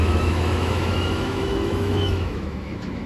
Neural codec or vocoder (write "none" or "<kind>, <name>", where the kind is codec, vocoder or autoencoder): autoencoder, DAC-VAE